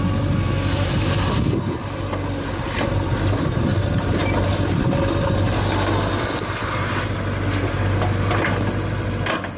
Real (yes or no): yes